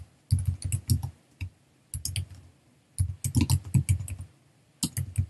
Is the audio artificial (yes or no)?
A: no